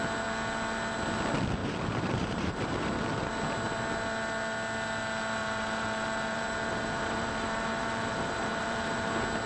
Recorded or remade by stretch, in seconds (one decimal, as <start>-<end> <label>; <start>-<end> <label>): 0.0-1.6 recorded; 1.6-3.3 remade; 3.3-5.4 recorded; 5.4-9.1 remade; 9.1-9.5 recorded